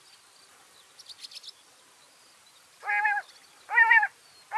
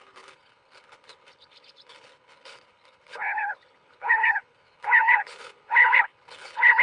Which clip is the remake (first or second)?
second